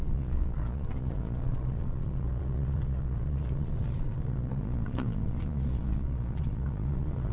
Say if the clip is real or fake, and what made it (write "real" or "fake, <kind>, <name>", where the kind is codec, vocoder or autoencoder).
fake, vocoder, Vocos